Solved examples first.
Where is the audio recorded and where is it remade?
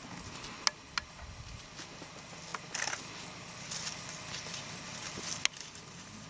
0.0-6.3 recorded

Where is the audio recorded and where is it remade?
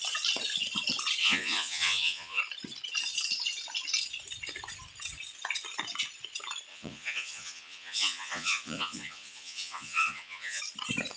0.0-1.2 recorded; 1.2-2.4 remade; 2.4-6.7 recorded; 6.7-10.6 remade; 10.6-11.2 recorded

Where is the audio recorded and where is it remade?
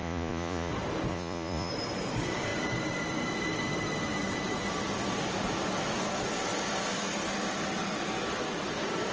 0.0-0.7 remade; 0.7-1.1 recorded; 1.1-1.7 remade; 1.7-9.1 recorded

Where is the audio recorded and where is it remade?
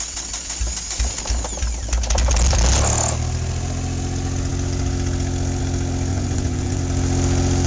0.0-6.1 recorded; 6.1-6.8 remade; 6.8-7.7 recorded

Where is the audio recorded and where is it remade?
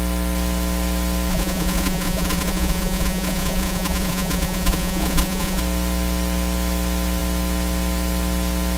0.0-1.3 recorded; 1.3-5.6 remade; 5.6-8.8 recorded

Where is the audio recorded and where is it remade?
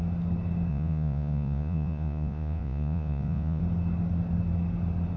0.0-0.7 recorded; 0.7-3.6 remade; 3.6-5.2 recorded